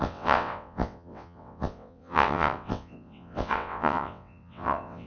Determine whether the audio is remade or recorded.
remade